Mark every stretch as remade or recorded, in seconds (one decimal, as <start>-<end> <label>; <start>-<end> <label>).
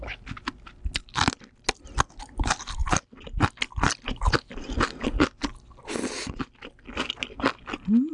0.0-8.1 recorded